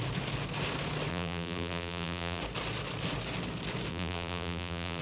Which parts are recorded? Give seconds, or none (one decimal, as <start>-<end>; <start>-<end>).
0.0-1.1; 2.4-3.9